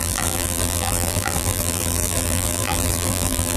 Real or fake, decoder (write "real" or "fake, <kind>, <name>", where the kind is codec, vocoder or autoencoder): fake, vocoder, BigVGAN v2